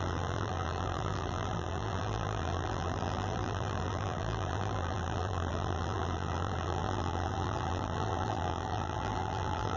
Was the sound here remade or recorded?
remade